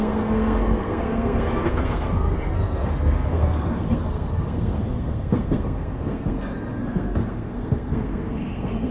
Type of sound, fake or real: fake